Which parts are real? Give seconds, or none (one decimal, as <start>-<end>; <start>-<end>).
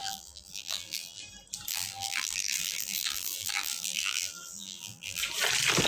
1.2-1.7; 5.2-5.9